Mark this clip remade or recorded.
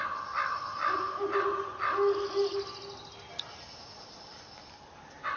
recorded